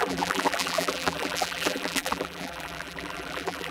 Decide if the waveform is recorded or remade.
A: remade